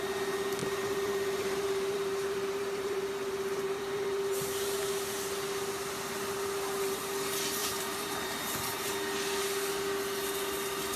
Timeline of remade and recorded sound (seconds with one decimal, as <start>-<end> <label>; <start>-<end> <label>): 0.0-0.6 recorded; 0.6-4.8 remade; 4.8-7.6 recorded; 7.6-8.9 remade; 8.9-11.0 recorded